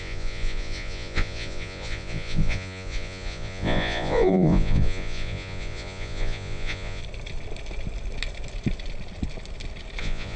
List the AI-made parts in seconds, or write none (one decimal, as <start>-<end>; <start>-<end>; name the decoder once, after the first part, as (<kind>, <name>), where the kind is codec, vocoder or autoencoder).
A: 0.0-7.0 (vocoder, Vocos); 10.0-10.4